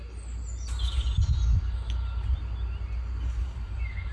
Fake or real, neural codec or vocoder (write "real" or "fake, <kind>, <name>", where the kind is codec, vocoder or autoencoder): real